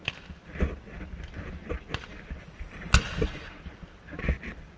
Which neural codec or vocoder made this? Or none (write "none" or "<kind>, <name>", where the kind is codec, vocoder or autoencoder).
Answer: none